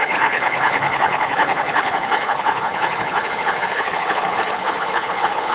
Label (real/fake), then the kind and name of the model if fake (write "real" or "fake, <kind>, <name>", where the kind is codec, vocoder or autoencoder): fake, codec, HILCodec